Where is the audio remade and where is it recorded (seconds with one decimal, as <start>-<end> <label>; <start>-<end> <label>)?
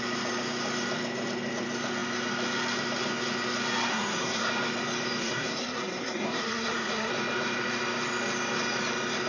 0.0-3.9 recorded; 3.9-4.5 remade; 4.5-5.2 recorded; 5.2-7.1 remade; 7.1-9.3 recorded